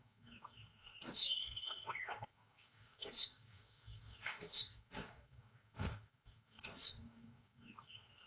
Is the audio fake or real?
fake